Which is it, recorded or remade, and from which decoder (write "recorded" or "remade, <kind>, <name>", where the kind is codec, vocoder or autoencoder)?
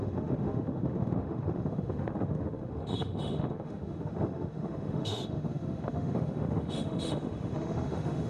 remade, autoencoder, DAC-VAE